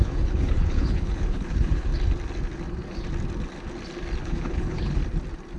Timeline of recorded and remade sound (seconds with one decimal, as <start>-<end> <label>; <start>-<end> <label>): 0.0-1.9 remade; 1.9-4.2 recorded; 4.2-5.0 remade; 5.0-5.6 recorded